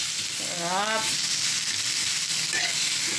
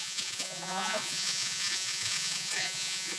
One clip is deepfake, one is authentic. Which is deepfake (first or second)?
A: second